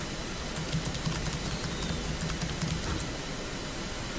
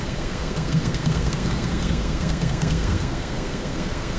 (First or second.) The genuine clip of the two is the first